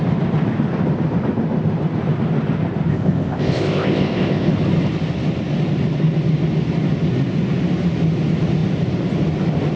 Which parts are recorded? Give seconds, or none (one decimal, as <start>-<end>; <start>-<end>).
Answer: 0.0-2.9; 4.5-9.8